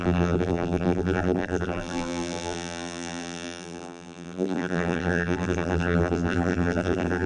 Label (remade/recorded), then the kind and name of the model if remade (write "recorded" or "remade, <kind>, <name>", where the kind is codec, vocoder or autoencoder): remade, vocoder, BigVGAN v2